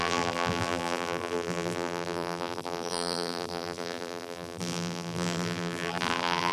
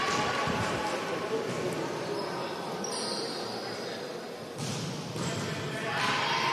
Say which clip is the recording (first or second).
second